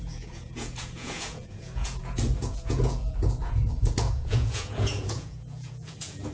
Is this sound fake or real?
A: fake